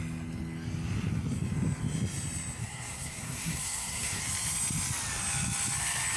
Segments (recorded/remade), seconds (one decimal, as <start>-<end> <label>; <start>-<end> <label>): 0.0-2.6 recorded; 2.6-4.2 remade; 4.2-6.2 recorded